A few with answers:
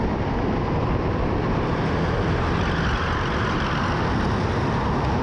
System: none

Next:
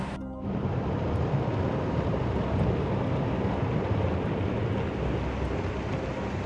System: none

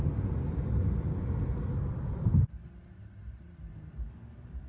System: none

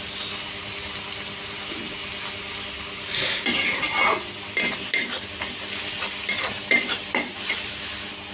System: none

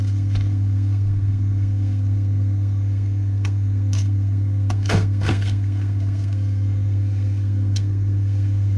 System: codec, SNAC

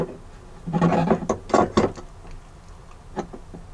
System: none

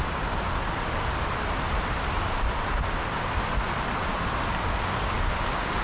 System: none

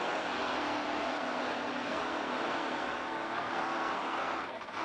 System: codec, SNAC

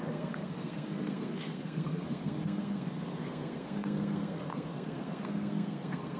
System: codec, SNAC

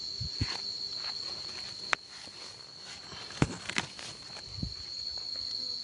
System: none